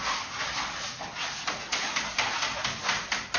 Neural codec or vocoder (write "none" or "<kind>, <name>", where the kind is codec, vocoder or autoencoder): none